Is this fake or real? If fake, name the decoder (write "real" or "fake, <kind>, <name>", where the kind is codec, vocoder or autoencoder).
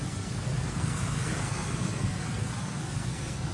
fake, codec, SNAC